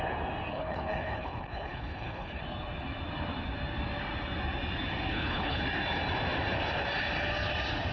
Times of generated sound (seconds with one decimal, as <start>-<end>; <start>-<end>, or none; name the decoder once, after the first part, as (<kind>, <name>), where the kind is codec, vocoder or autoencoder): 0.5-2.4 (codec, HILCodec); 5.1-5.6